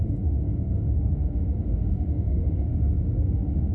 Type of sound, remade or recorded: remade